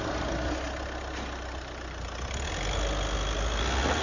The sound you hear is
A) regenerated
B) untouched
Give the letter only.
B